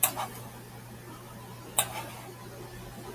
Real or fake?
real